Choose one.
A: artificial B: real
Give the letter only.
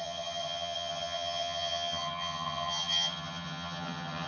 A